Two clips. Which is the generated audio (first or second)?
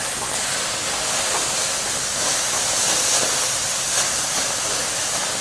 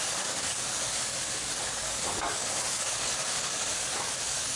second